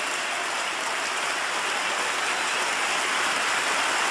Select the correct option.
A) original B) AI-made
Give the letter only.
A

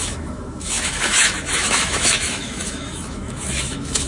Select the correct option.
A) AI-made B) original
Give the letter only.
A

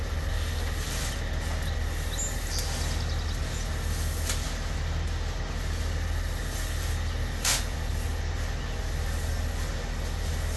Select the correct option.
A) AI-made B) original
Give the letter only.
B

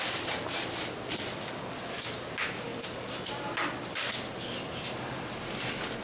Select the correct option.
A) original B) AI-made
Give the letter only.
A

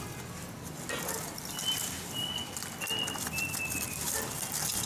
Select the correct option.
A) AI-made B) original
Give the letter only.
B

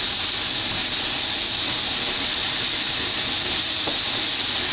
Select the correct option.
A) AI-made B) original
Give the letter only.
B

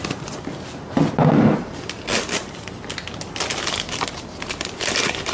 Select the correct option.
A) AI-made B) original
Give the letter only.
B